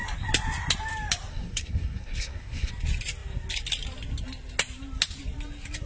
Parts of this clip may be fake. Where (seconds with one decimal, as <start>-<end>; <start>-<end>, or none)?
1.3-2.7